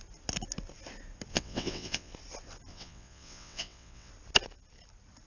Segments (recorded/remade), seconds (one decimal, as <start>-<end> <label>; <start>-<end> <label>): 0.0-1.3 recorded; 1.3-2.1 remade; 2.1-2.7 recorded; 2.7-4.1 remade; 4.1-5.3 recorded